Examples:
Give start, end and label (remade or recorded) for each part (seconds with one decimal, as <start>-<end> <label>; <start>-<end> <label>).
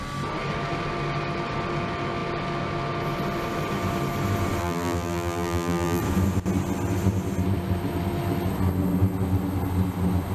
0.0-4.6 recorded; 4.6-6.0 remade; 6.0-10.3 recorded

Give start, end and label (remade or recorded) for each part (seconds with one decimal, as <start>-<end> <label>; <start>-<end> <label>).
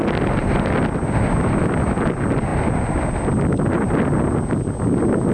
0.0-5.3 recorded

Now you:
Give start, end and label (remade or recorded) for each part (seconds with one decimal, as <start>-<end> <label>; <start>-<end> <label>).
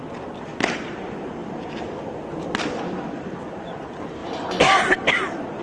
0.0-1.4 remade; 1.4-2.0 recorded; 2.0-4.2 remade; 4.2-4.8 recorded; 4.8-5.6 remade